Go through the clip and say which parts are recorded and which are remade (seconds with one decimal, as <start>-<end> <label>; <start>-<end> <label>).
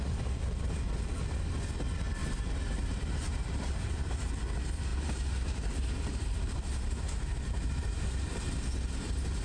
0.0-2.2 recorded; 2.2-4.3 remade; 4.3-4.9 recorded; 4.9-8.5 remade; 8.5-9.4 recorded